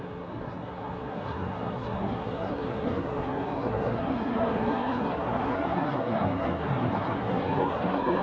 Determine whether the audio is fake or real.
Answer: fake